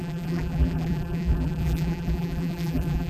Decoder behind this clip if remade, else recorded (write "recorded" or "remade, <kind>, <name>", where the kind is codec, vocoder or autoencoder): remade, vocoder, BigVGAN v2